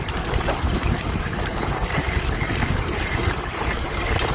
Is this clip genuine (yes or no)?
no